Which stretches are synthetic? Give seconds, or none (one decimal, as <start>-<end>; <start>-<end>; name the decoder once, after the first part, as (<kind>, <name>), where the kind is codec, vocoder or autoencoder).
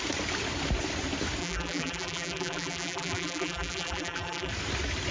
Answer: 1.4-4.5 (vocoder, BigVGAN v2)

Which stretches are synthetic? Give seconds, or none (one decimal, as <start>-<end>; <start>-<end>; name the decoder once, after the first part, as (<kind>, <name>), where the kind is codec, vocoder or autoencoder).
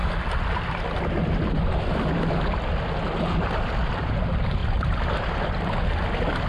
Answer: none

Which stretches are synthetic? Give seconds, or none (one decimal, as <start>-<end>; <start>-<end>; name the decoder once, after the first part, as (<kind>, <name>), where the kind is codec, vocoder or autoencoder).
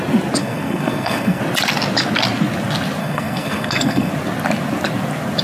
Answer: 0.4-1.4 (codec, SNAC); 3.0-4.1